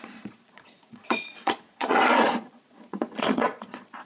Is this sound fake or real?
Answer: fake